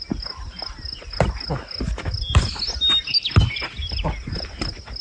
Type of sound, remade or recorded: recorded